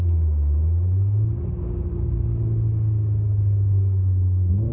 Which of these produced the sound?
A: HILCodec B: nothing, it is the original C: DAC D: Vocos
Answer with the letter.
C